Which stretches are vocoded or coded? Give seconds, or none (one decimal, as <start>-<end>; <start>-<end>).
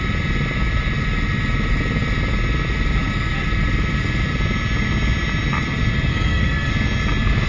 6.1-6.7